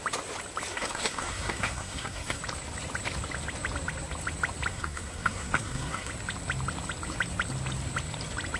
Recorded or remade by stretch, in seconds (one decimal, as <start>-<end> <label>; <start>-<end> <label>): 0.0-0.7 recorded; 0.7-2.4 remade; 2.4-4.7 recorded; 4.7-6.1 remade; 6.1-8.6 recorded